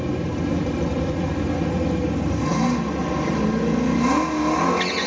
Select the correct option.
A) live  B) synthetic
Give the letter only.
A